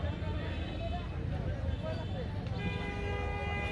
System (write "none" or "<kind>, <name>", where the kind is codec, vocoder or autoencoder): none